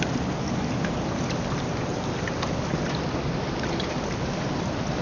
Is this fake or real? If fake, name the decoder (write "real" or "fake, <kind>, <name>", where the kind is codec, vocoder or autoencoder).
real